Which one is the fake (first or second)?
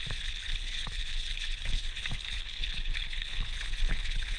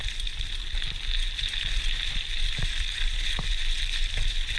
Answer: first